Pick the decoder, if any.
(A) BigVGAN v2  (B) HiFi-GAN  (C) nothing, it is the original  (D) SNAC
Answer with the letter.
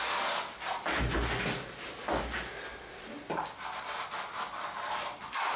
C